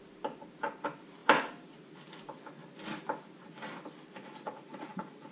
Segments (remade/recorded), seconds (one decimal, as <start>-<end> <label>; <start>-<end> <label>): 0.0-4.2 recorded; 4.2-5.3 remade